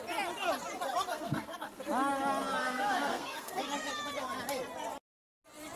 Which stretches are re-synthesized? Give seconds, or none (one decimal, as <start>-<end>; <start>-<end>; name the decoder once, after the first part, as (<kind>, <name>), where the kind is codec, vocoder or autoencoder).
1.1-1.8 (codec, SNAC); 2.6-3.9

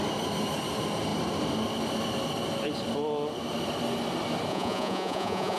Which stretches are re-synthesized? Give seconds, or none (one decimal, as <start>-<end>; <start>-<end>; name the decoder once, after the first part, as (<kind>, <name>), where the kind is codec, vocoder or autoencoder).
4.5-5.6 (vocoder, Vocos)

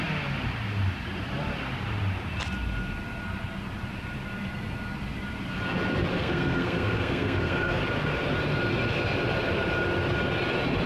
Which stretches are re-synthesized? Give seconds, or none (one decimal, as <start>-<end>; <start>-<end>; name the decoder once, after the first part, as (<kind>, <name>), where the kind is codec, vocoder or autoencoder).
6.1-7.8 (codec, SNAC)

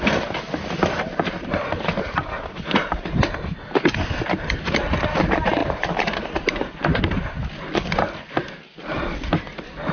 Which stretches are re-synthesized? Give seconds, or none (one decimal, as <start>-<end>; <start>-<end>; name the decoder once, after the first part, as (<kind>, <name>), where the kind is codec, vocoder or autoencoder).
5.6-7.0 (vocoder, BigVGAN v2)

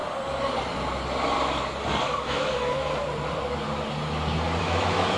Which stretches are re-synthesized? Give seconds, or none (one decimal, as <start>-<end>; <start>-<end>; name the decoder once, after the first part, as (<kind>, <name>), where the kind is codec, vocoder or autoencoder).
2.0-3.0 (autoencoder, DAC-VAE); 4.6-5.2

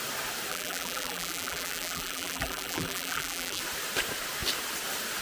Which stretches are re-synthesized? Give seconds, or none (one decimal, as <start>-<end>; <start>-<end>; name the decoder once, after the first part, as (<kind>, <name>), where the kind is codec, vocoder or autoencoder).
0.5-3.6 (vocoder, BigVGAN v2)

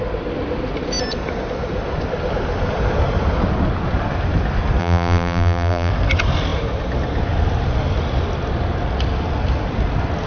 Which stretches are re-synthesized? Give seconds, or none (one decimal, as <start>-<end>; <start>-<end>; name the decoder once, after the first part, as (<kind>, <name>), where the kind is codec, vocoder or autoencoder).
4.8-5.9 (vocoder, BigVGAN v2)

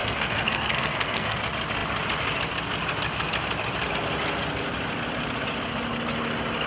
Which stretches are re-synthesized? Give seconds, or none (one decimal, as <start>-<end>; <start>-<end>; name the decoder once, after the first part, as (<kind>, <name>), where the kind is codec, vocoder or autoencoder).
0.0-1.4 (codec, SNAC)